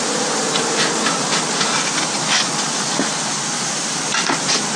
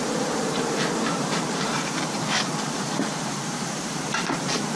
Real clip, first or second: first